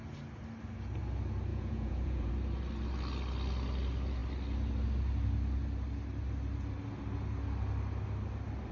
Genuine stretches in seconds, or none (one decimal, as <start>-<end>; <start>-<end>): 0.0-1.5; 2.3-8.7